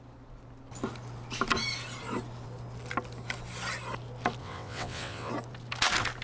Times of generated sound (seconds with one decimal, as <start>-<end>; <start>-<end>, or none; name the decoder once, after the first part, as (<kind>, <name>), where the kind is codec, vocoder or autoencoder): 4.4-5.3 (vocoder, WaveNeXt)